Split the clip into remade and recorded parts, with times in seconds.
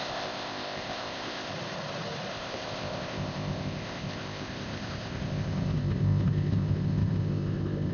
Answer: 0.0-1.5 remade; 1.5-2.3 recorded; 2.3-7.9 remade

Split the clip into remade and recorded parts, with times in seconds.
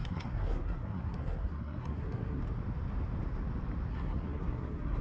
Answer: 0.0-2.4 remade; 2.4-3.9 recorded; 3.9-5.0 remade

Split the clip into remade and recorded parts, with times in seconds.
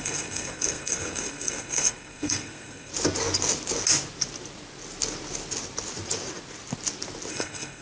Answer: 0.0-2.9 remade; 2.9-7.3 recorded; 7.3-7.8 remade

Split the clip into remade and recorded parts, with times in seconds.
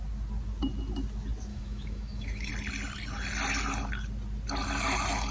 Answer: 0.0-1.5 recorded; 1.5-2.5 remade; 2.5-5.3 recorded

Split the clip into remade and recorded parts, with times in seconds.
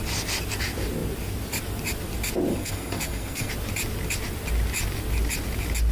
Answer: 0.0-2.5 recorded; 2.5-3.5 remade; 3.5-5.9 recorded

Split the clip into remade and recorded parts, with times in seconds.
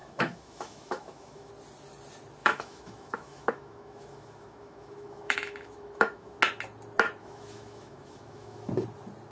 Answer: 0.0-1.5 remade; 1.5-2.4 recorded; 2.4-6.4 remade; 6.4-7.2 recorded; 7.2-8.7 remade; 8.7-9.3 recorded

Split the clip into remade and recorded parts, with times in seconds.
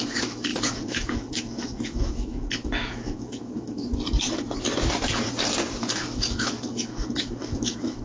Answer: 0.0-3.9 remade; 3.9-5.8 recorded; 5.8-8.0 remade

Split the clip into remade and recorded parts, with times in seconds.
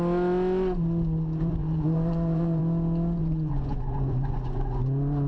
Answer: 0.0-1.6 recorded; 1.6-2.6 remade; 2.6-3.2 recorded; 3.2-4.8 remade; 4.8-5.3 recorded